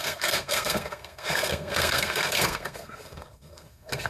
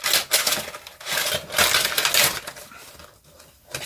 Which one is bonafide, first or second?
second